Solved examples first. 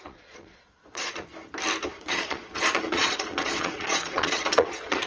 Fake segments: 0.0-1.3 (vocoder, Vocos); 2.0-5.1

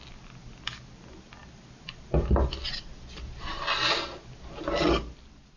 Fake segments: none

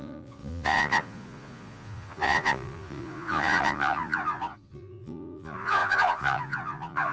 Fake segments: 0.0-7.1 (vocoder, Vocos)

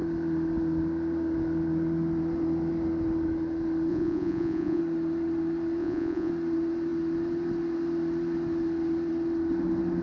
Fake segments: 3.9-4.8 (vocoder, Vocos); 5.8-6.3

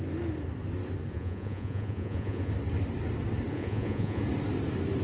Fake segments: 1.1-2.5 (vocoder, Vocos); 3.5-4.2

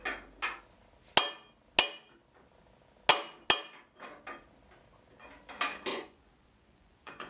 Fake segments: 5.9-7.3 (vocoder, Vocos)